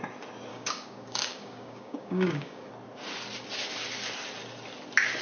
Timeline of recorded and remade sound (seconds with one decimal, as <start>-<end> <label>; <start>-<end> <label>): 0.0-0.5 recorded; 0.5-2.7 remade; 2.7-5.2 recorded